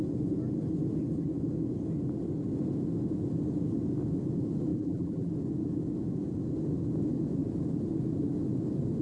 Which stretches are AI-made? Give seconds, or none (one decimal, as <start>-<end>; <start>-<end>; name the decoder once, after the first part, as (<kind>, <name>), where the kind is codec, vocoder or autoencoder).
4.7-5.3 (vocoder, BigVGAN v2)